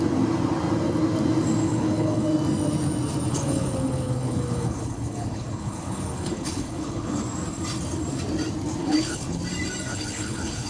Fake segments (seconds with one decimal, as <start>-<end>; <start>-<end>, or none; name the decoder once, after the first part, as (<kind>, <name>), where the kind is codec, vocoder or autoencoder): 1.6-2.2 (codec, HILCodec); 3.3-7.2; 8.8-9.4; 9.9-10.7